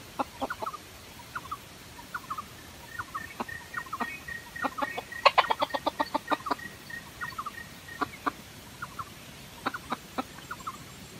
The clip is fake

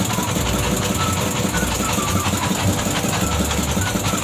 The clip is real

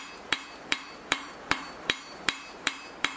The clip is fake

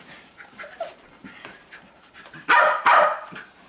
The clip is fake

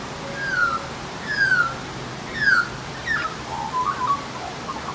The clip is fake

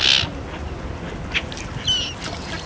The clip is real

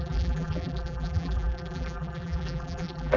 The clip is fake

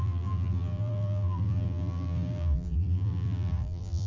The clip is fake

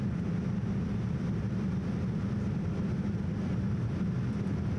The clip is real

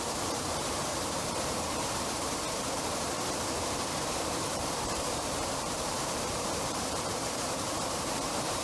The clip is fake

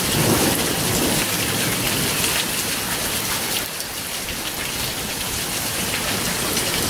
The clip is real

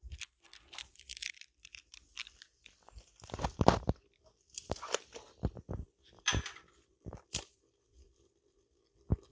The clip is fake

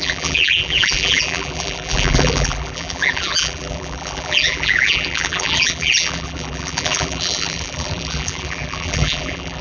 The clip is fake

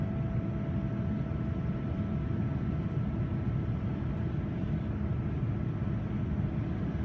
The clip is real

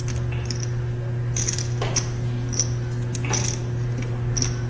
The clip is real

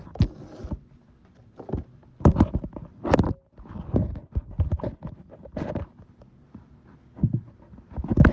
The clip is real